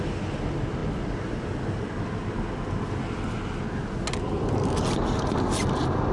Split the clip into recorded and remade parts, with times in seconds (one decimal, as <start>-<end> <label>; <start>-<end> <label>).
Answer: 0.0-6.1 recorded

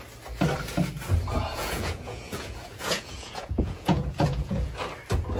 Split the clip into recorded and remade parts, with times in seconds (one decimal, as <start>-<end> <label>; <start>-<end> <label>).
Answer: 0.0-1.5 recorded; 1.5-4.7 remade; 4.7-5.4 recorded